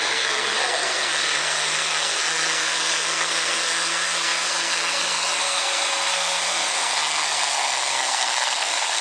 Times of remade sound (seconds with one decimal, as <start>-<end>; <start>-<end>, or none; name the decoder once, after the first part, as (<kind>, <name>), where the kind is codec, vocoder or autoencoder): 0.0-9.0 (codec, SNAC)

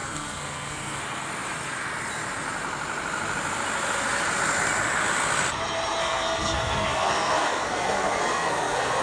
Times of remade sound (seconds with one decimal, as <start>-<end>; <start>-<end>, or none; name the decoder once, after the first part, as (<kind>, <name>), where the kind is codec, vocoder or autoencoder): 0.0-1.0 (codec, SNAC); 6.0-9.0

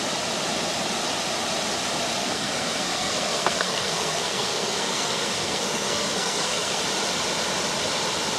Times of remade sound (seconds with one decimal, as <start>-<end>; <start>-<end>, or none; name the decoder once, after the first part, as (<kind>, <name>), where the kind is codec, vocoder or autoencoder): 2.2-6.8 (codec, SNAC)